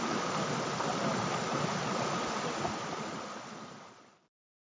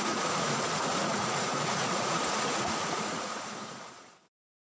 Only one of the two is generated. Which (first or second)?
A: second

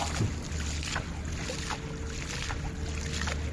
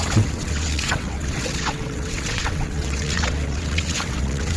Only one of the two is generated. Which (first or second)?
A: second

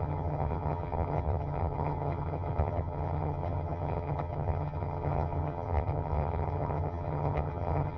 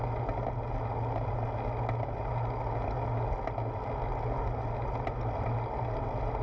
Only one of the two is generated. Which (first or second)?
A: first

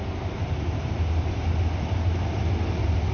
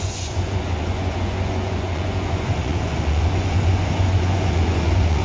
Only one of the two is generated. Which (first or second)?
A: second